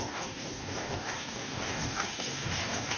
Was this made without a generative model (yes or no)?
no